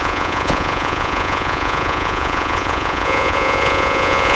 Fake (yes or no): yes